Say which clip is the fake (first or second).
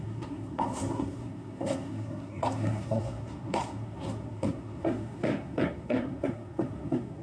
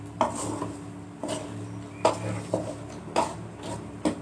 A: first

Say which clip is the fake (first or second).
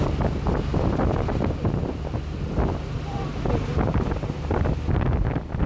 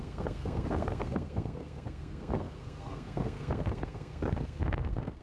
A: second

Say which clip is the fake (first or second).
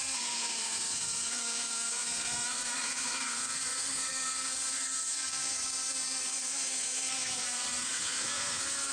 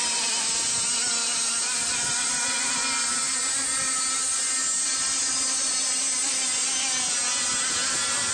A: first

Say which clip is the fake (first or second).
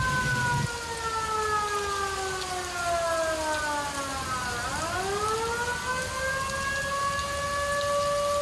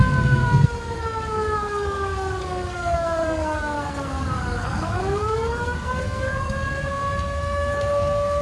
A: second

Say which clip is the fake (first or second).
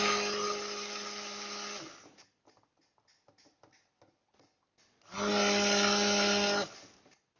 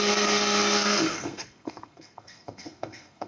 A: second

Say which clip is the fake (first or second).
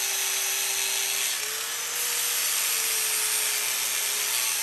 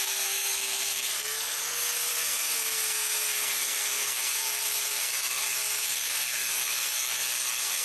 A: second